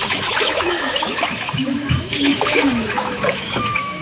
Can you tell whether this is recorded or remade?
remade